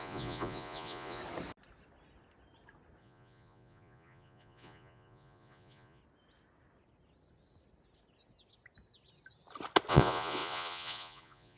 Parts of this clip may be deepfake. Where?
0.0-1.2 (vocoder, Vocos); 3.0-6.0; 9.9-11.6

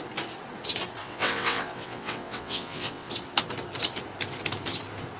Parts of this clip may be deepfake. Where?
1.0-3.1 (vocoder, WaveNeXt)

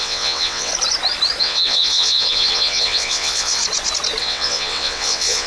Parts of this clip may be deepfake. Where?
0.0-0.7 (vocoder, WaveNeXt); 1.4-3.6; 4.2-5.5

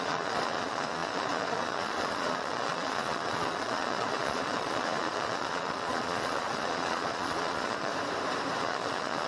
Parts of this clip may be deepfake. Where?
0.0-7.9 (vocoder, Vocos); 8.6-9.3

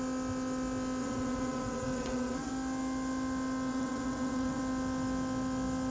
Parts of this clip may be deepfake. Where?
1.0-2.5 (vocoder, WaveNeXt); 3.7-4.6

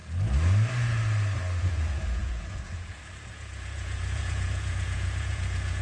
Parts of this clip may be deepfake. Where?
1.6-5.8 (vocoder, Vocos)

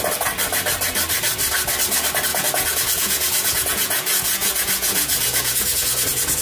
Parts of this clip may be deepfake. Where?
2.3-6.4 (vocoder, Vocos)